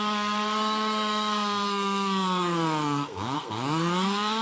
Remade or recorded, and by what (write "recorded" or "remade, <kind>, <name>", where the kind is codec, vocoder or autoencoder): remade, codec, SNAC